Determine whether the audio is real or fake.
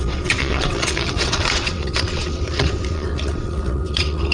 fake